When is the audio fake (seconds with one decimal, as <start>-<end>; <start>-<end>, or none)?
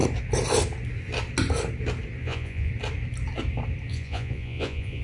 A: 2.2-2.7; 3.9-5.0